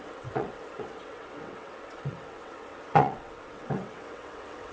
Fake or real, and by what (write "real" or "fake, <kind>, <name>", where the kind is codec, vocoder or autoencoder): fake, vocoder, WaveNeXt